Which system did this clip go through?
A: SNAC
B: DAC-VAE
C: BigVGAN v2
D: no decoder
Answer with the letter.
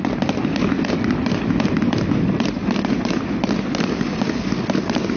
D